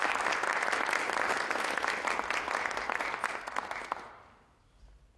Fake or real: real